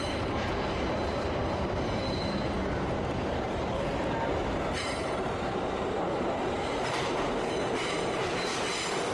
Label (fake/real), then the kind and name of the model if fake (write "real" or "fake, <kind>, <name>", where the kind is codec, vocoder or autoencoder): fake, vocoder, BigVGAN v2